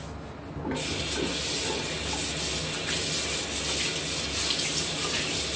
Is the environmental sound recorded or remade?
recorded